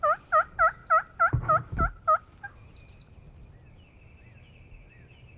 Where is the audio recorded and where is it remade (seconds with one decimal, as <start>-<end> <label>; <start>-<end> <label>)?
0.0-5.4 recorded